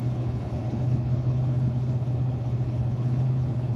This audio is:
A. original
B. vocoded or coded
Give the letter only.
B